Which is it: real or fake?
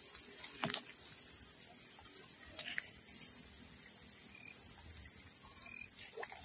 real